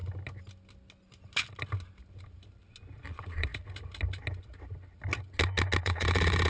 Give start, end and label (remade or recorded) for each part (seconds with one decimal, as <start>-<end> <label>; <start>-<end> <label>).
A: 0.0-3.1 recorded; 3.1-3.5 remade; 3.5-5.8 recorded; 5.8-6.5 remade